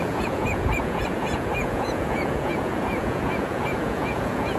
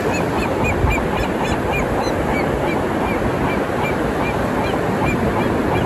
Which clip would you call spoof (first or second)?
first